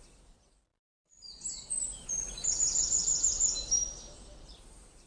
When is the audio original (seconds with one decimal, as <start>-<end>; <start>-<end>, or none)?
0.0-0.7; 2.0-3.9